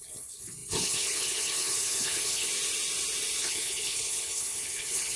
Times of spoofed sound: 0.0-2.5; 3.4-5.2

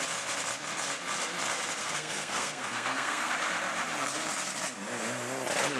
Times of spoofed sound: 1.8-3.3

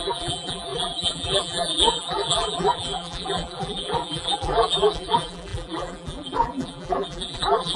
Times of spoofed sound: 0.0-7.8

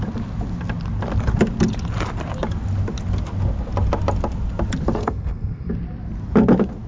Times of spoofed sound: 5.0-5.7

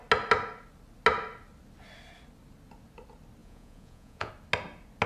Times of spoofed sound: 3.4-4.3